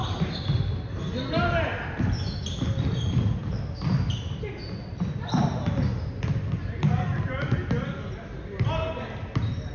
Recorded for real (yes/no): yes